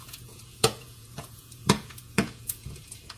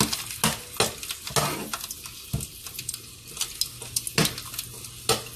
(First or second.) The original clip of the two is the second